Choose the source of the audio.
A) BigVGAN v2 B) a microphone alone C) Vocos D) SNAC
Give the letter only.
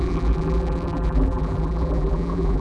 A